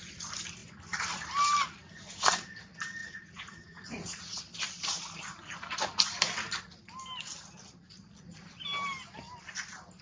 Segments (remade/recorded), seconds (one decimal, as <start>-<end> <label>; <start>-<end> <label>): 0.0-3.0 recorded; 3.0-4.4 remade; 4.4-10.0 recorded